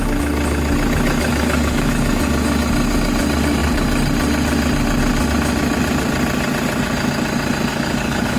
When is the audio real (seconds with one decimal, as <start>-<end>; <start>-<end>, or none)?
0.0-1.3; 1.9-7.7